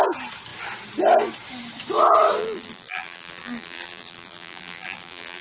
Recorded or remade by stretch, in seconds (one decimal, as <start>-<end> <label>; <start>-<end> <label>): 0.0-2.4 recorded; 2.4-5.4 remade